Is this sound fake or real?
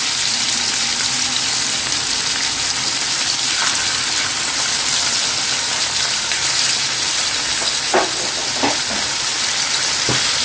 real